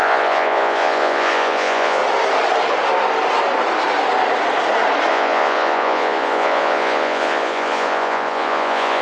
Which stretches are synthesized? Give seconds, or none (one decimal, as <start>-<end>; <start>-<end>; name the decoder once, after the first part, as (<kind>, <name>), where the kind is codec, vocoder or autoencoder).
0.0-2.0 (vocoder, Vocos); 5.1-9.0